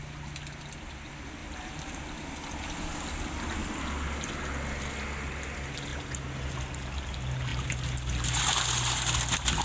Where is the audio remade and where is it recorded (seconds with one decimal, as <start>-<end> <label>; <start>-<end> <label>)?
0.0-1.4 recorded; 1.4-2.0 remade; 2.0-9.6 recorded